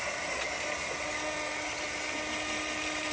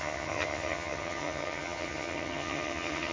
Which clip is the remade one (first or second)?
second